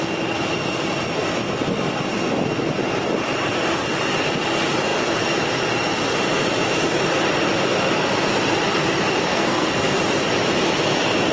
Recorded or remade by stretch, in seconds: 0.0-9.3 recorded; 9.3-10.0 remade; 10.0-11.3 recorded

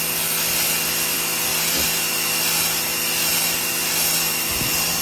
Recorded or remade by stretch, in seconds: 0.0-5.0 recorded

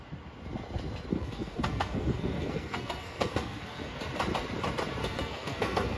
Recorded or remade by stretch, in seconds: 0.0-1.1 recorded; 1.1-4.0 remade; 4.0-5.0 recorded; 5.0-6.0 remade

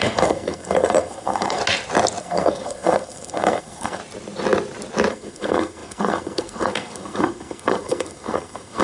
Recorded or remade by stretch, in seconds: 0.0-1.6 remade; 1.6-2.2 recorded; 2.2-4.0 remade; 4.0-5.1 recorded; 5.1-8.8 remade

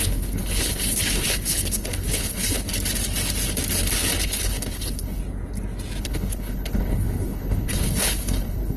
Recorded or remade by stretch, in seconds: 0.0-2.7 remade; 2.7-4.2 recorded; 4.2-5.2 remade; 5.2-6.0 recorded; 6.0-8.8 remade

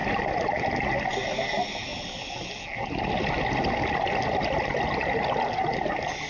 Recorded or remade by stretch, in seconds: 0.0-6.3 recorded

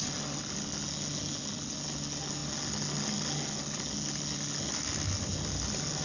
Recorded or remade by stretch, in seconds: 0.0-6.0 recorded